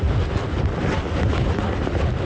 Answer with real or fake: real